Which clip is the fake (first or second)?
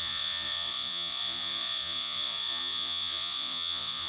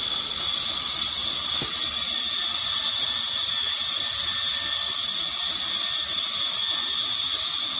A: first